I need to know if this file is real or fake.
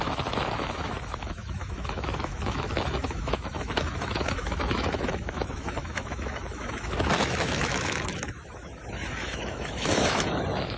fake